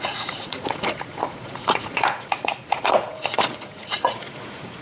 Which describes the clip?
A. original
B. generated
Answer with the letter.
B